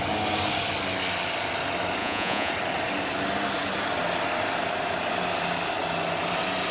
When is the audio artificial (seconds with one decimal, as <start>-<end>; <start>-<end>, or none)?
2.0-2.5